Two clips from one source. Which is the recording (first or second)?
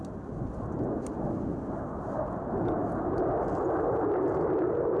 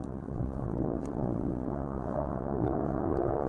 first